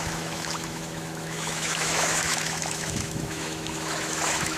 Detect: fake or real fake